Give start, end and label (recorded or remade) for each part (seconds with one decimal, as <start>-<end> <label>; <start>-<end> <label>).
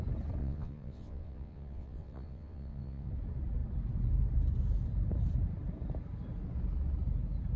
0.0-0.4 recorded; 0.4-3.1 remade; 3.1-7.6 recorded